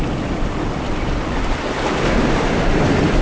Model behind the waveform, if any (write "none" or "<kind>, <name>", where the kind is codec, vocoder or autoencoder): none